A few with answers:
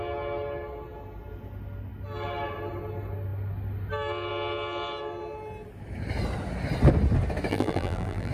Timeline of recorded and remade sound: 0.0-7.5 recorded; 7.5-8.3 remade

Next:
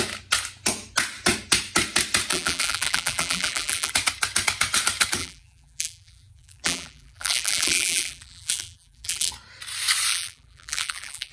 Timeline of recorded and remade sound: 0.0-2.3 recorded; 2.3-3.9 remade; 3.9-5.2 recorded; 5.2-9.3 remade; 9.3-10.1 recorded; 10.1-11.3 remade

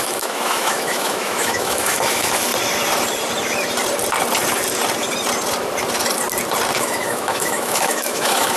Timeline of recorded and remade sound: 0.0-2.5 remade; 2.5-6.8 recorded; 6.8-8.6 remade

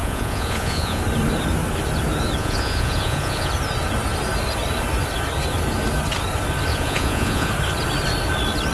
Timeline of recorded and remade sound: 0.0-1.0 remade; 1.0-2.4 recorded; 2.4-3.5 remade; 3.5-6.7 recorded; 6.7-7.5 remade; 7.5-8.7 recorded

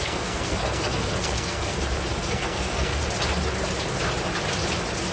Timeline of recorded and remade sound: 0.0-1.8 remade; 1.8-2.2 recorded; 2.2-3.0 remade; 3.0-5.1 recorded

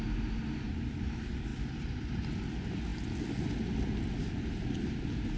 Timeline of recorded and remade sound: 0.0-5.4 recorded

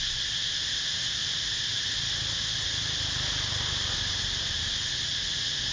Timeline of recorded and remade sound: 0.0-5.7 recorded

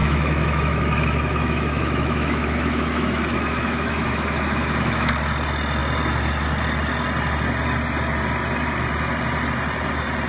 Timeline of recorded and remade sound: 0.0-5.1 remade; 5.1-10.3 recorded